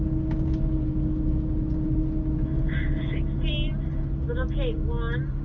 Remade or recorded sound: recorded